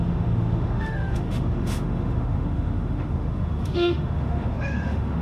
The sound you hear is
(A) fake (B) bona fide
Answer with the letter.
A